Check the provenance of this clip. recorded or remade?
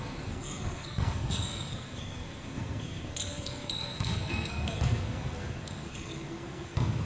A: remade